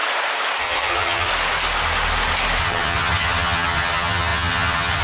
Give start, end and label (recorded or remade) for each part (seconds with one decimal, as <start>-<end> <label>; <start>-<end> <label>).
0.0-0.6 recorded; 0.6-1.3 remade; 1.3-2.6 recorded; 2.6-5.0 remade